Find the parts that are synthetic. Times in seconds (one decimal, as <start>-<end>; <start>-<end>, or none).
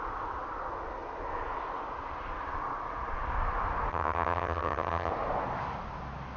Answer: 3.9-5.1